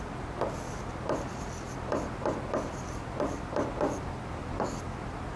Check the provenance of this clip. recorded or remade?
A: recorded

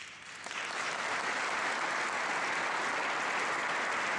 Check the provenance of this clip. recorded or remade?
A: recorded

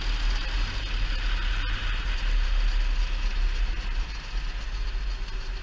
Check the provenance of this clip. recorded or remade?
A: recorded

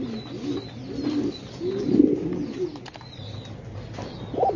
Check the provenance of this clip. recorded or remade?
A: recorded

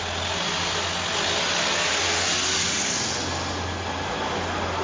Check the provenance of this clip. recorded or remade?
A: recorded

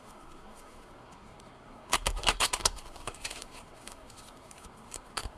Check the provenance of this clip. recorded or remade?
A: remade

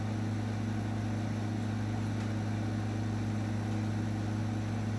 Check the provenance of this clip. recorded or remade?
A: recorded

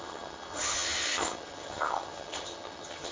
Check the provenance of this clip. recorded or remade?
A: remade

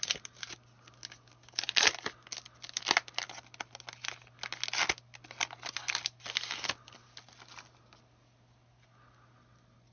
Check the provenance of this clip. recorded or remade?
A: recorded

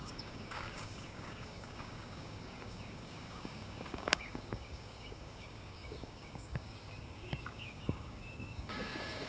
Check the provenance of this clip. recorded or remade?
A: remade